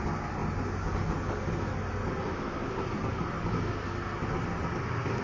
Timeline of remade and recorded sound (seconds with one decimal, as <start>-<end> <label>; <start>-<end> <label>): 0.0-5.2 recorded